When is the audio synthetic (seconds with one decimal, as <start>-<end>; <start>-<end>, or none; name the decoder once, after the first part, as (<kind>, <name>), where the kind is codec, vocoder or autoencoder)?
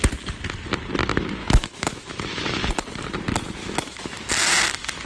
1.4-2.7 (autoencoder, DAC-VAE); 3.6-4.3